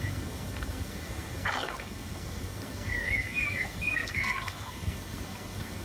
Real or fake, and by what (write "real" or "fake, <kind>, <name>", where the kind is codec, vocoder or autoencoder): fake, codec, SNAC